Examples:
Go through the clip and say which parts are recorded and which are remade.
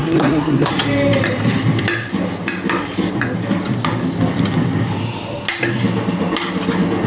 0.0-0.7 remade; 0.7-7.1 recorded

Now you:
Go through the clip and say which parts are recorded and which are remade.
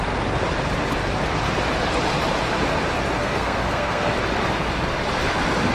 0.0-3.2 recorded; 3.2-4.1 remade; 4.1-5.7 recorded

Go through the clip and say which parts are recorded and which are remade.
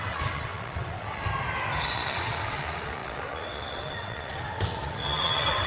0.0-1.3 remade; 1.3-1.8 recorded; 1.8-5.7 remade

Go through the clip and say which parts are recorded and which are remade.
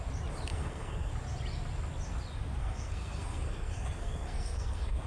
0.0-0.5 recorded; 0.5-1.1 remade; 1.1-2.6 recorded; 2.6-5.1 remade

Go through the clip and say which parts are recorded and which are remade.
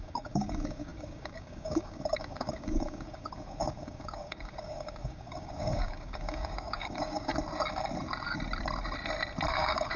0.0-7.3 remade; 7.3-9.5 recorded; 9.5-10.0 remade